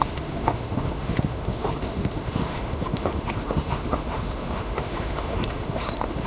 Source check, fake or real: fake